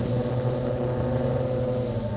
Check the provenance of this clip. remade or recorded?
recorded